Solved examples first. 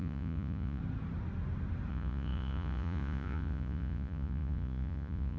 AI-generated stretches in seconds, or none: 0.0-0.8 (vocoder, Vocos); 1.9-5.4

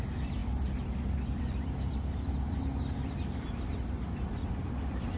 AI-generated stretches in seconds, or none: none

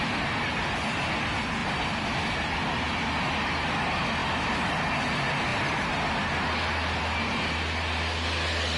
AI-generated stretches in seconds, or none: none

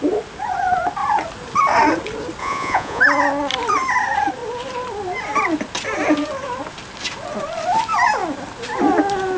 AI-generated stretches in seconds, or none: 2.4-3.0 (vocoder, Vocos)

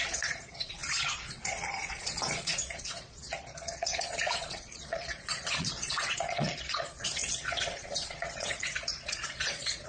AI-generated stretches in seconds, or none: 0.0-9.9 (vocoder, Vocos)

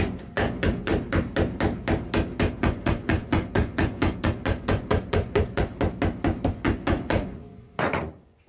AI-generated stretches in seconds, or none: 0.0-0.9 (vocoder, Vocos); 2.6-5.7; 6.5-8.5